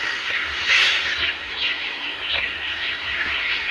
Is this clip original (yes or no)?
no